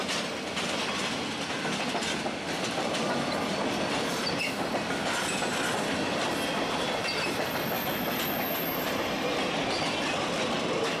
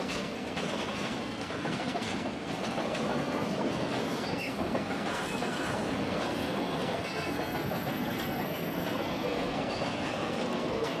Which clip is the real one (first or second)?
first